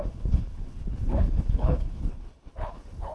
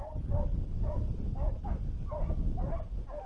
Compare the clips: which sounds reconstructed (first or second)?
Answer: first